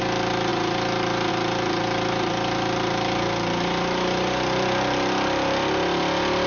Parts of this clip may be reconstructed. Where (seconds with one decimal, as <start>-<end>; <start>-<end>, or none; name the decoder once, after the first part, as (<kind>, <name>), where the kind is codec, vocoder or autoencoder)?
none